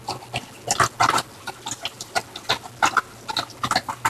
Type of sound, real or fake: real